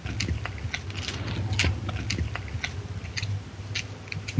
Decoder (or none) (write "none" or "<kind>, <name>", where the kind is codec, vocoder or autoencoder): none